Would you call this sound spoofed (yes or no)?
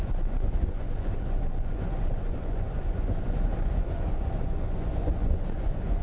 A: yes